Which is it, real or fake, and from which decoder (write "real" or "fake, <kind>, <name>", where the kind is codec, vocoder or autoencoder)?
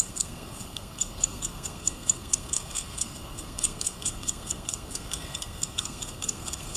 fake, codec, SNAC